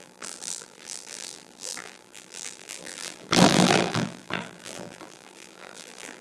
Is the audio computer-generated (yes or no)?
yes